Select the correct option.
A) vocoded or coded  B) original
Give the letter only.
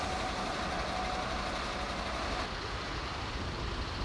B